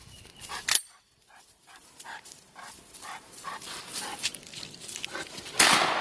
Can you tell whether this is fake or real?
fake